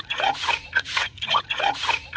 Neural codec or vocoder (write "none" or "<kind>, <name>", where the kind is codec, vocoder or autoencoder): vocoder, Vocos